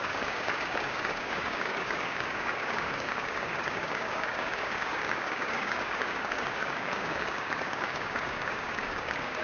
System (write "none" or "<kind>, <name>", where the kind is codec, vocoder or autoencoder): codec, DAC